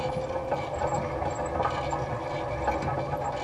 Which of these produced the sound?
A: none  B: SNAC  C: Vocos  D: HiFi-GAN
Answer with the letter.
A